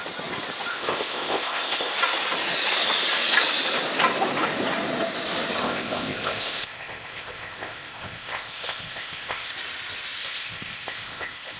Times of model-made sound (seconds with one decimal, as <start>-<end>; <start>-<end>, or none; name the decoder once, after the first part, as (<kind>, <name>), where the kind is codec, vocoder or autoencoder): 0.7-1.9 (codec, ZipCodec); 5.6-9.5; 10.2-11.6